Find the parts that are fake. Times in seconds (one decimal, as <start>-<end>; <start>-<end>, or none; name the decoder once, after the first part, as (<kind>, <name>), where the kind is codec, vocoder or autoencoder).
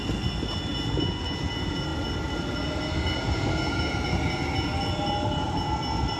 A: none